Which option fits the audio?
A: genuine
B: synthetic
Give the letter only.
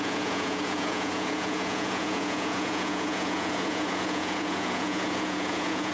B